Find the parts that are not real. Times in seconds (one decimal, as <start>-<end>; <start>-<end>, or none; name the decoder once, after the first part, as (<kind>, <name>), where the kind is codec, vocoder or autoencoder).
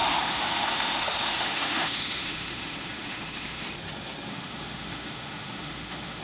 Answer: 0.0-3.7 (autoencoder, DAC-VAE); 4.3-6.2